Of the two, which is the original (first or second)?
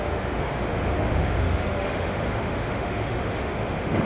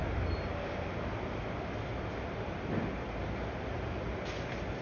second